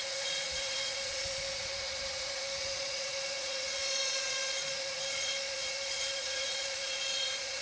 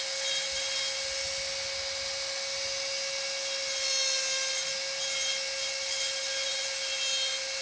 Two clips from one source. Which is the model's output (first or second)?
first